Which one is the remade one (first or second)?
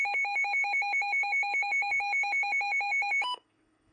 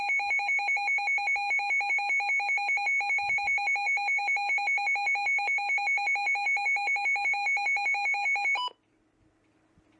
first